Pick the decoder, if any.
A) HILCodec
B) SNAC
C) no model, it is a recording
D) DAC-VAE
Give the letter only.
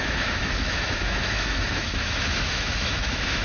D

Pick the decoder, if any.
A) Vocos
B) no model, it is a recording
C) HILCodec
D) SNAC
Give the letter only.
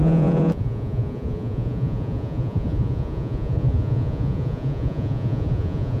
A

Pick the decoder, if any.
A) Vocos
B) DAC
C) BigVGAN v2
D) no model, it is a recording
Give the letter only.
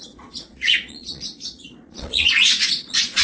A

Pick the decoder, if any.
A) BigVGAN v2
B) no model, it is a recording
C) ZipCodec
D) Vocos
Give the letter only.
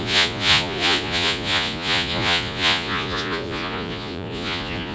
D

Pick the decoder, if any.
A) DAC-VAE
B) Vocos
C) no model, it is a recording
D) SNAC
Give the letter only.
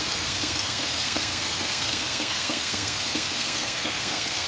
D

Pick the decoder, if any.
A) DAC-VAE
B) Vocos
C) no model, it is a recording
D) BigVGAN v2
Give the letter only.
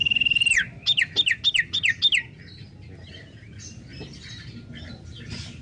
C